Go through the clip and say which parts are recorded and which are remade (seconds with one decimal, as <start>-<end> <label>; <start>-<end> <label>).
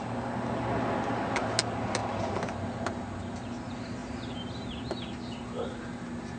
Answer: 0.0-6.4 recorded